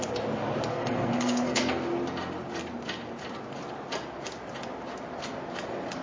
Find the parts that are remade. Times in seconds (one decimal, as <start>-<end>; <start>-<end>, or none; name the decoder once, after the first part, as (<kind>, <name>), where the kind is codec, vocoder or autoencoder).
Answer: 0.7-1.8 (codec, SNAC)